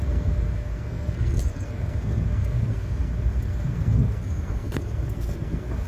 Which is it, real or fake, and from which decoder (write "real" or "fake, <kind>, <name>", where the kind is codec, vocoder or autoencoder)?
fake, codec, SNAC